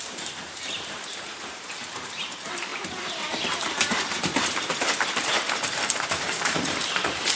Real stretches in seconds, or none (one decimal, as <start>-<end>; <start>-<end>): none